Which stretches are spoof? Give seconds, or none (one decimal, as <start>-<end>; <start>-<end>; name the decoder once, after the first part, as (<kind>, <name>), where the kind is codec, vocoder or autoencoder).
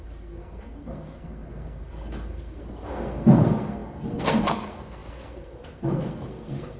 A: 0.0-6.8 (codec, SNAC)